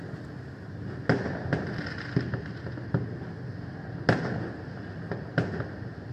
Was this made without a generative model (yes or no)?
yes